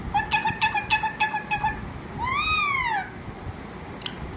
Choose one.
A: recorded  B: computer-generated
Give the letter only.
A